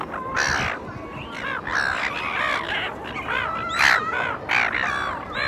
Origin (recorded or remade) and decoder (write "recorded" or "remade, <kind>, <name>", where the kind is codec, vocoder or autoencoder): recorded